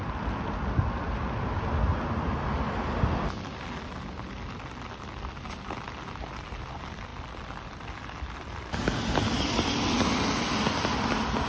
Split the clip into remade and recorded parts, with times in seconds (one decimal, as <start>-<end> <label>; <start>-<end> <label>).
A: 0.0-11.5 recorded